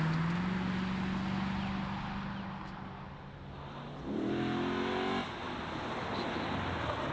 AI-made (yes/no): no